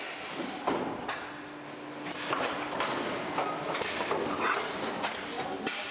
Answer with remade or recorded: recorded